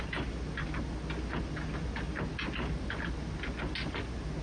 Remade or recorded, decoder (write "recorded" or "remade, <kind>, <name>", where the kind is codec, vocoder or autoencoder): recorded